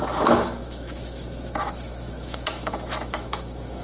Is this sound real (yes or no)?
no